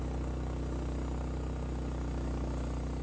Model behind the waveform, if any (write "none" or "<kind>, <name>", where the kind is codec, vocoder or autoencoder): none